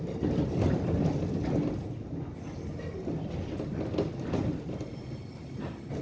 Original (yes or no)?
yes